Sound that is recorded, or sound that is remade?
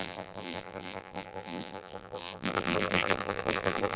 remade